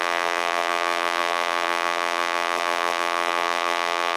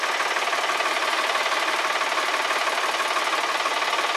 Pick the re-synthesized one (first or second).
first